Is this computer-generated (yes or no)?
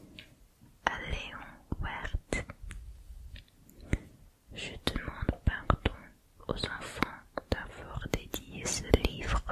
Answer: no